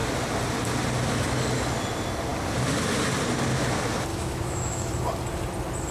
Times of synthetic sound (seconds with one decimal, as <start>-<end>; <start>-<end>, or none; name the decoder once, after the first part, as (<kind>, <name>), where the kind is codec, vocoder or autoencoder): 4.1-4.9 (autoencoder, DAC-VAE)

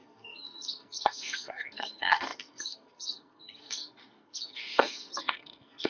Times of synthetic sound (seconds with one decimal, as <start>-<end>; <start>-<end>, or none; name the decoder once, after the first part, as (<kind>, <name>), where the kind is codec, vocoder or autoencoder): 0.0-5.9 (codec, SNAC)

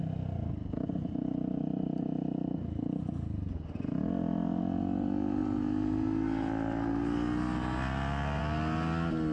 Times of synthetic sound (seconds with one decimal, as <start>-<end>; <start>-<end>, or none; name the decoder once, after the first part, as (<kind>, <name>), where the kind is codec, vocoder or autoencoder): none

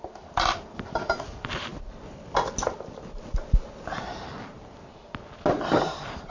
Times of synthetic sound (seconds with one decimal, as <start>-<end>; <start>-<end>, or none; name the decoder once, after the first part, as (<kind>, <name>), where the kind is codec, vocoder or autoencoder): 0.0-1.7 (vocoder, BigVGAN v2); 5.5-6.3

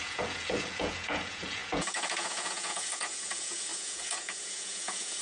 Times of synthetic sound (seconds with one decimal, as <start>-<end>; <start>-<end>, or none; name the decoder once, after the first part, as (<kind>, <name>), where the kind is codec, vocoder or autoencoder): 0.0-5.2 (vocoder, Vocos)